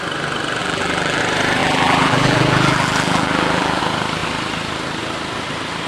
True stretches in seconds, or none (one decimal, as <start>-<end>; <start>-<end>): 0.0-0.6; 1.2-1.6; 3.8-5.9